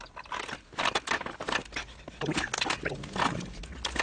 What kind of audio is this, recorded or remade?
recorded